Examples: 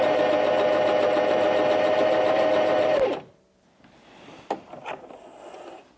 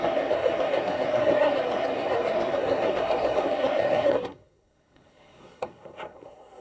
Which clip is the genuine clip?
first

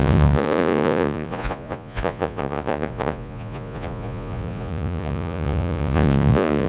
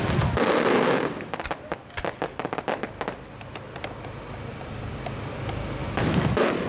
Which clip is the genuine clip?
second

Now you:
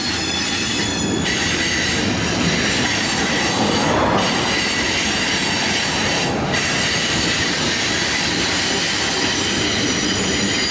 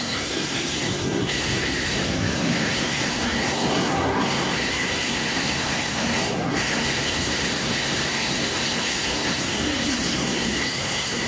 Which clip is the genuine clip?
first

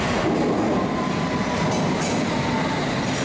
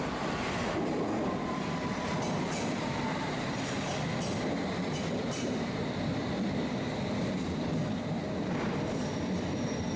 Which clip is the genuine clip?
first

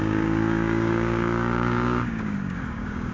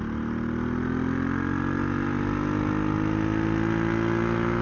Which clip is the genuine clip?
second